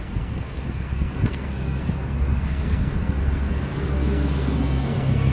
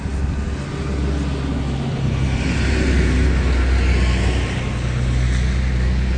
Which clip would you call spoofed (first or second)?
first